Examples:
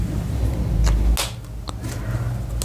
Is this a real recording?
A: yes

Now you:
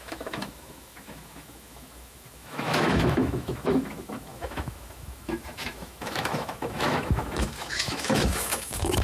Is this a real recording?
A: no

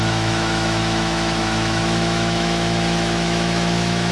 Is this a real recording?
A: no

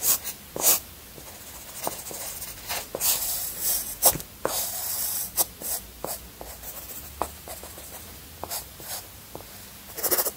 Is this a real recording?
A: yes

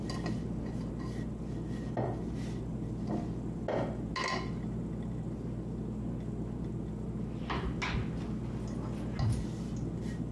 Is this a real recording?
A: yes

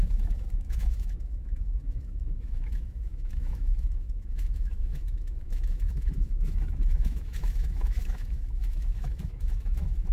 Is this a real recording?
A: no